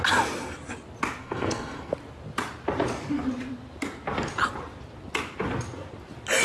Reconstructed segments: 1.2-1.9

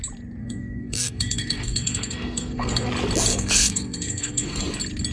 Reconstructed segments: 0.4-2.9; 3.3-4.6